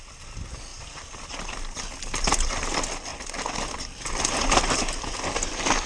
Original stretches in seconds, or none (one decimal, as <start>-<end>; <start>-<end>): 0.0-0.7; 1.4-5.9